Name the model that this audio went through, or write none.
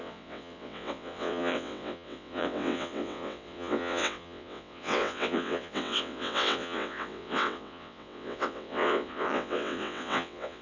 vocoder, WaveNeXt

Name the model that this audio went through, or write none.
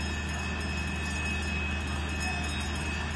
none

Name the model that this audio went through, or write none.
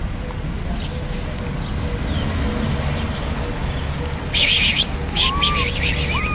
none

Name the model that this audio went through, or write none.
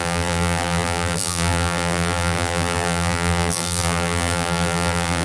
vocoder, BigVGAN v2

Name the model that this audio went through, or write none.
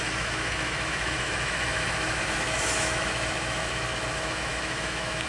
autoencoder, DAC-VAE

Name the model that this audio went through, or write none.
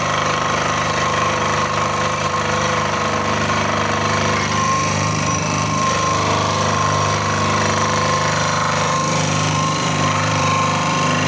vocoder, BigVGAN v2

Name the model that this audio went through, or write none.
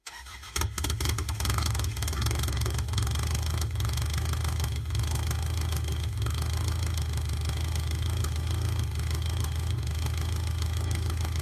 autoencoder, DAC-VAE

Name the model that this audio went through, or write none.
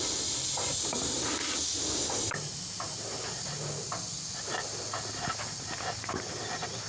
none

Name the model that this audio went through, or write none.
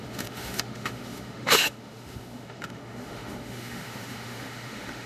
autoencoder, DAC-VAE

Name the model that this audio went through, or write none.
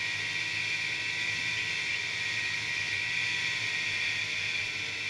none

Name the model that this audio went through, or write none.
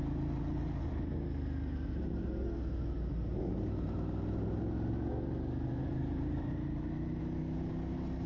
none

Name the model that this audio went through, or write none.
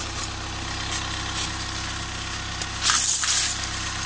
none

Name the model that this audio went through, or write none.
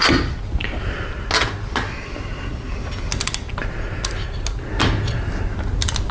none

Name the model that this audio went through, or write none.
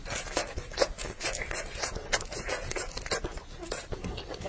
none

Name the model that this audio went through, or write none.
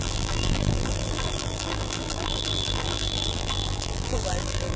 vocoder, BigVGAN v2